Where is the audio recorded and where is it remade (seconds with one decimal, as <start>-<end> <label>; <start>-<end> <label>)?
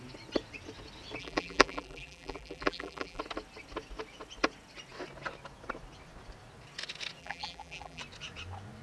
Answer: 0.0-1.2 recorded; 1.2-3.2 remade; 3.2-7.2 recorded; 7.2-8.0 remade; 8.0-8.8 recorded